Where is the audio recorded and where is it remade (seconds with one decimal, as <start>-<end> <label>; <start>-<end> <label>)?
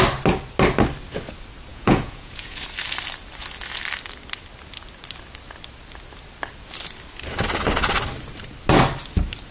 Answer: 0.0-1.7 recorded; 1.7-2.6 remade; 2.6-9.5 recorded